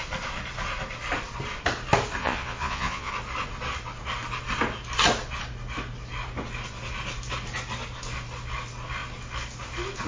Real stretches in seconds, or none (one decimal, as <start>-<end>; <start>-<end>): 0.0-2.2; 3.1-10.1